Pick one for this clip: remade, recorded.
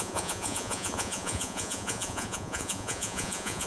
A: remade